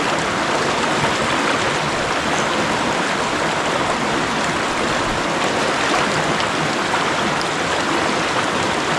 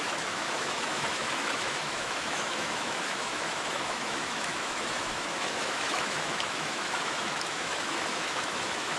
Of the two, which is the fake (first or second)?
second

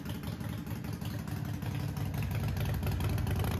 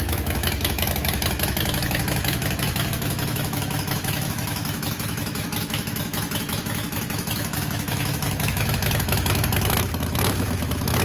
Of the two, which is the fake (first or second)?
second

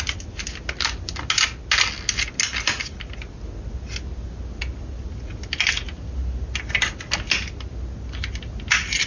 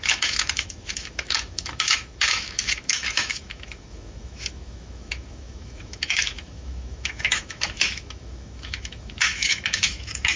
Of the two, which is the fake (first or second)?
second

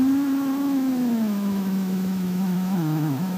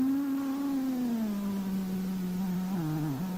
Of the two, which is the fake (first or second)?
first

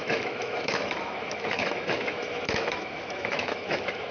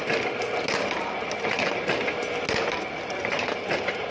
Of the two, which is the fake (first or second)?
first